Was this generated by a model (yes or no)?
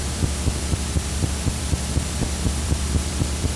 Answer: yes